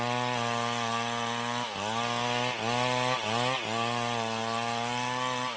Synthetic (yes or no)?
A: no